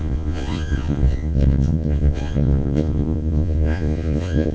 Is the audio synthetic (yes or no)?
yes